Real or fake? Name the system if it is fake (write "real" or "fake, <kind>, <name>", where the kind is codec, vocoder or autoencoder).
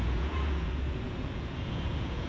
fake, vocoder, Vocos